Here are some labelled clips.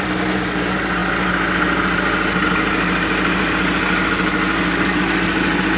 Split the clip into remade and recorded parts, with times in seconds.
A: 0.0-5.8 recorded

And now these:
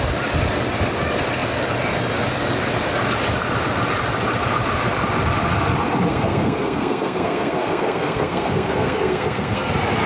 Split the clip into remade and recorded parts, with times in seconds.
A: 0.0-6.1 recorded; 6.1-9.7 remade; 9.7-10.1 recorded